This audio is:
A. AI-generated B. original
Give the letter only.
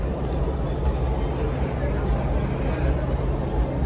B